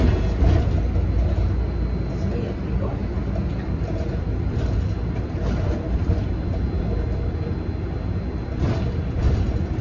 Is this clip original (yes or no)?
yes